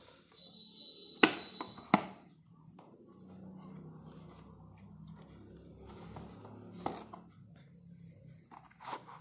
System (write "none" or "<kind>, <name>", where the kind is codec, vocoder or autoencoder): none